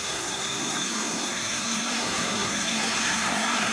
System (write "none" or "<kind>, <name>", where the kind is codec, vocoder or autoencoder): codec, SNAC